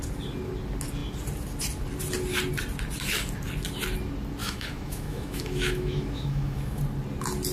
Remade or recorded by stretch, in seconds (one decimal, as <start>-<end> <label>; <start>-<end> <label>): 0.0-4.4 recorded; 4.4-6.8 remade; 6.8-7.5 recorded